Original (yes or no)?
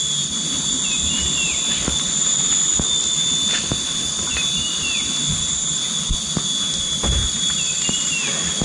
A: yes